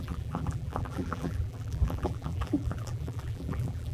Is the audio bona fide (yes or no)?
no